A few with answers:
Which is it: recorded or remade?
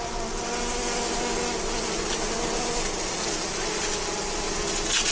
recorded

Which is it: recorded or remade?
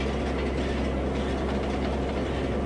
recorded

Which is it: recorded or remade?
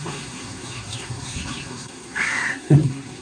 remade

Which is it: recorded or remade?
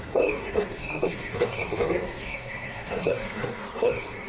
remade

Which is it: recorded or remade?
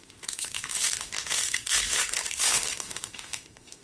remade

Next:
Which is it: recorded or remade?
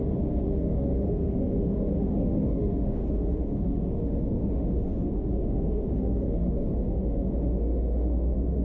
remade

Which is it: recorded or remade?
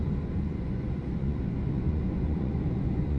remade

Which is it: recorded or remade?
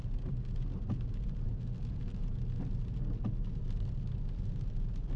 recorded